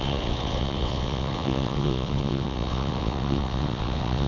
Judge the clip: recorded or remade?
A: remade